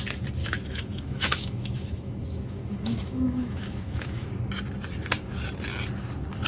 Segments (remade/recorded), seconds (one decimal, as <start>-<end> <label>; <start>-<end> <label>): 0.0-0.4 recorded; 0.4-4.3 remade; 4.3-6.5 recorded